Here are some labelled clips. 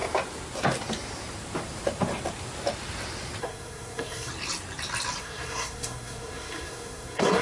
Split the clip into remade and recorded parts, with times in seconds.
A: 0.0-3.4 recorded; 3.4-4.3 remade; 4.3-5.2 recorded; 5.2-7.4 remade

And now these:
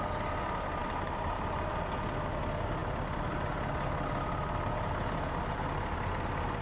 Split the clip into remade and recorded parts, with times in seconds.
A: 0.0-0.8 recorded; 0.8-1.8 remade; 1.8-6.6 recorded

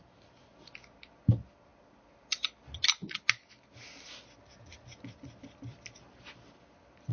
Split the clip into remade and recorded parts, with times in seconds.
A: 0.0-7.1 recorded

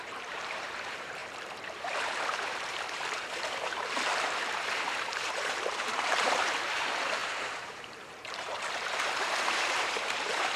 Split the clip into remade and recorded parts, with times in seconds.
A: 0.0-10.6 remade

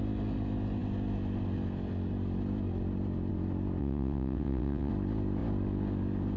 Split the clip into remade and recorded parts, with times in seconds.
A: 0.0-3.8 recorded; 3.8-4.9 remade; 4.9-6.4 recorded

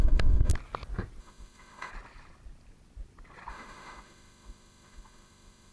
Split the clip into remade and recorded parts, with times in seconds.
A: 0.0-0.5 remade; 0.5-1.2 recorded; 1.2-1.9 remade; 1.9-3.5 recorded; 3.5-5.7 remade